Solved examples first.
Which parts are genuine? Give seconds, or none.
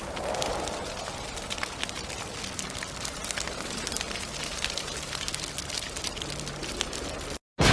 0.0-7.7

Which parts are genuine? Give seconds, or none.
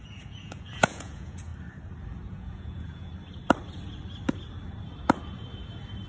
1.5-2.3; 3.1-6.1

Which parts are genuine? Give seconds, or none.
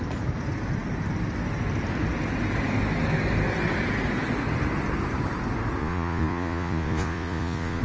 0.0-5.8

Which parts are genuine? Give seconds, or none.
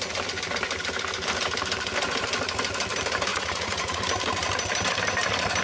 0.0-3.3; 4.0-5.6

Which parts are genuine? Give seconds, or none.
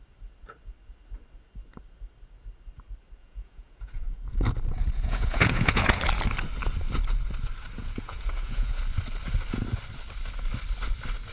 0.0-3.2; 6.0-7.8; 8.8-11.3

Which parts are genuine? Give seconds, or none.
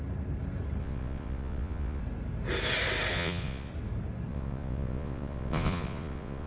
0.0-0.8; 2.0-3.1; 3.7-4.3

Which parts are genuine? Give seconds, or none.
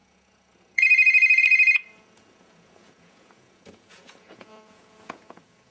none